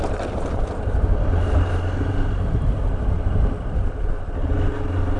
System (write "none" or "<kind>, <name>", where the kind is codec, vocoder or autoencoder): none